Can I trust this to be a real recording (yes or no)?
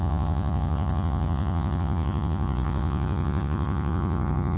no